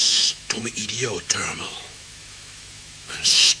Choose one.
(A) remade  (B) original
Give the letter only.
A